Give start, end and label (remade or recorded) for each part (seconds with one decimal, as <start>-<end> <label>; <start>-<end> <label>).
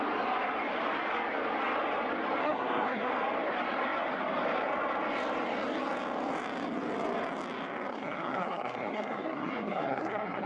0.0-2.4 recorded; 2.4-3.1 remade; 3.1-7.9 recorded; 7.9-10.5 remade